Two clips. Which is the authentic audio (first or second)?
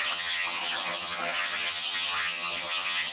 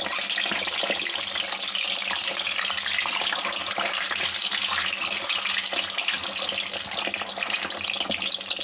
second